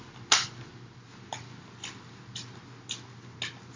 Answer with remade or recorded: recorded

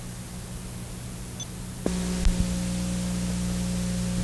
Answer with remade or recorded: recorded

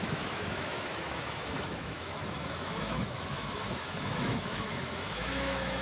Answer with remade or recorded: remade